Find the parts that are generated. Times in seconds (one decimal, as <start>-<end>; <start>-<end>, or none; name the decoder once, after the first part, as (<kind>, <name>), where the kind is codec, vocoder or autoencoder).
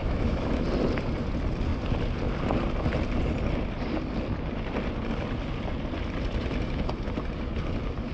0.0-0.6 (autoencoder, DAC-VAE)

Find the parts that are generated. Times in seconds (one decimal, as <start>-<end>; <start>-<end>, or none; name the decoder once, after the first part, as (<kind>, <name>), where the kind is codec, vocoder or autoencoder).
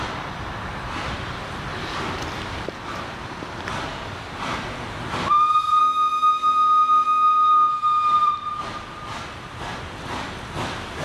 5.8-7.7 (autoencoder, DAC-VAE)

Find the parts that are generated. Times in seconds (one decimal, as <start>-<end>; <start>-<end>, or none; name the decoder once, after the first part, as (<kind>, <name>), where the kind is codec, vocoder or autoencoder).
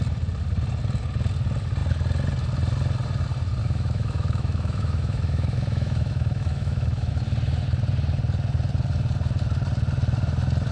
3.6-7.1 (autoencoder, DAC-VAE)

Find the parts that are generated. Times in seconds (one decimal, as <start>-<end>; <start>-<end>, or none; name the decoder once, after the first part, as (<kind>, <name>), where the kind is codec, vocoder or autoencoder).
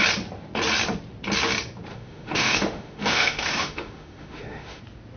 1.9-4.8 (autoencoder, DAC-VAE)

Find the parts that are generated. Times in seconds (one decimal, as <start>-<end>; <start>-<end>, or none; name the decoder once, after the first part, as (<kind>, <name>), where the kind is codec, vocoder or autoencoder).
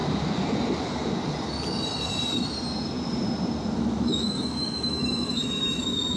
3.7-6.2 (autoencoder, DAC-VAE)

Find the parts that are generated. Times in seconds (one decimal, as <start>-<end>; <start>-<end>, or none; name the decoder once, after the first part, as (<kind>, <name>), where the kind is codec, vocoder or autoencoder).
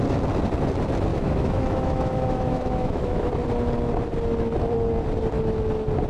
1.1-3.3 (autoencoder, DAC-VAE)